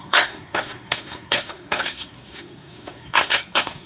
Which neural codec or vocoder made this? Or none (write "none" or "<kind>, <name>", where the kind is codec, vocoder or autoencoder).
codec, SNAC